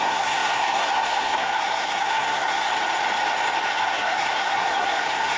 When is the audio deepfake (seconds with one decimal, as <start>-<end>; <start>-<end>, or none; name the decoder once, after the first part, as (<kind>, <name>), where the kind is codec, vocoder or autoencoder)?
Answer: 0.0-2.7 (codec, SNAC); 3.7-5.4